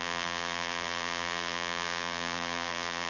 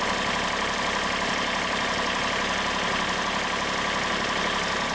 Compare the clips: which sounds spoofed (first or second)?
first